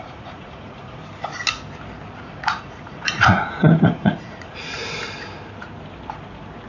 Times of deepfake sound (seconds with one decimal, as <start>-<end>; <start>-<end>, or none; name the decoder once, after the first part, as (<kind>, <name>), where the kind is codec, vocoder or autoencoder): 0.0-1.0 (vocoder, Vocos); 2.2-4.8